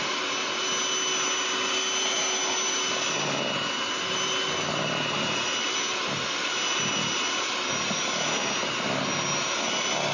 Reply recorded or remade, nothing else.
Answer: recorded